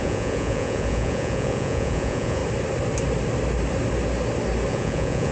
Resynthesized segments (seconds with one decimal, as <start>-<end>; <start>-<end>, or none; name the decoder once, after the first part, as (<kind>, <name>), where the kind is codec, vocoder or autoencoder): 0.0-2.4 (vocoder, Vocos); 4.7-5.3